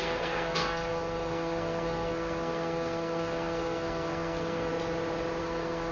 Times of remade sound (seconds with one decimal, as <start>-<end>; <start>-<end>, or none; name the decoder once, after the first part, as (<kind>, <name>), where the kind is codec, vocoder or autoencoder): 0.0-4.7 (codec, SNAC); 5.4-5.9